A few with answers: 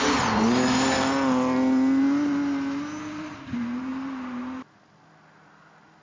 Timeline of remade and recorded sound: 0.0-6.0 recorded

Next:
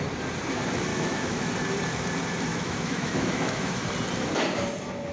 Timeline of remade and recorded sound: 0.0-0.9 recorded; 0.9-1.5 remade; 1.5-2.5 recorded; 2.5-3.8 remade; 3.8-5.1 recorded

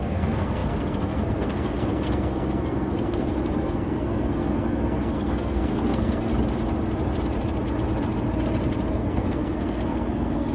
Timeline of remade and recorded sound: 0.0-6.3 remade; 6.3-8.9 recorded; 8.9-10.5 remade

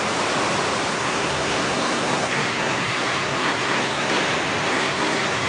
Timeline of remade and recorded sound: 0.0-0.9 recorded; 0.9-4.2 remade; 4.2-4.7 recorded; 4.7-5.5 remade

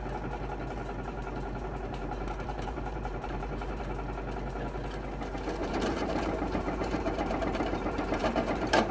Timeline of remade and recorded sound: 0.0-1.2 recorded; 1.2-3.8 remade; 3.8-5.6 recorded; 5.6-8.9 remade

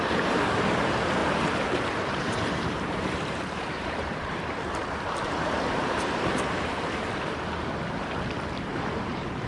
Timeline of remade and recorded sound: 0.0-1.2 recorded; 1.2-6.3 remade; 6.3-8.7 recorded; 8.7-9.5 remade

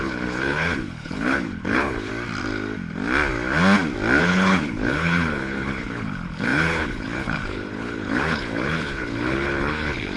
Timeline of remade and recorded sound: 0.0-2.1 remade; 2.1-4.2 recorded; 4.2-10.2 remade